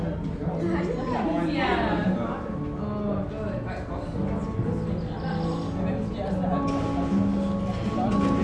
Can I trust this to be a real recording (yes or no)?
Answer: yes